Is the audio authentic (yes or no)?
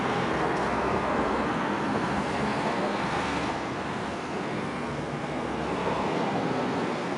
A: no